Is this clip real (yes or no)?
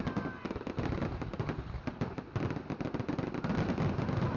yes